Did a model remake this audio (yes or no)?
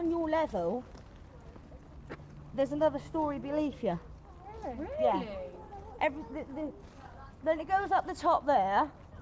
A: no